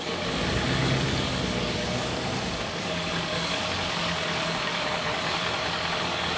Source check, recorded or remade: remade